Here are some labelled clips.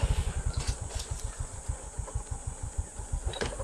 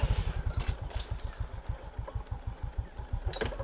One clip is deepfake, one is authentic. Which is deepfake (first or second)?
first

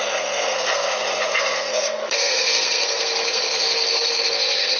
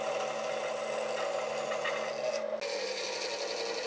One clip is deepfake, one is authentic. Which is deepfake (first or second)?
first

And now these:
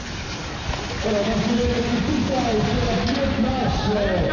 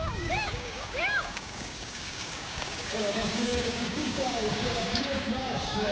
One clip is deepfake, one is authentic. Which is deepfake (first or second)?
second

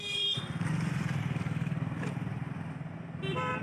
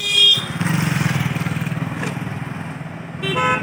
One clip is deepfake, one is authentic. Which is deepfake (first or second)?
first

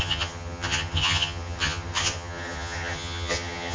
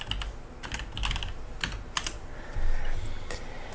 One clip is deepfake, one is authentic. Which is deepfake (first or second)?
first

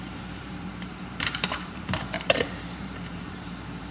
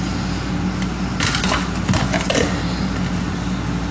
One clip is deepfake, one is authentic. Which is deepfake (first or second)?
first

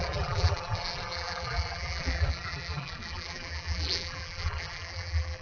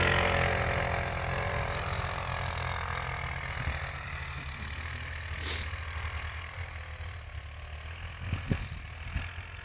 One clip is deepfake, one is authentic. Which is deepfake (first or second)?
first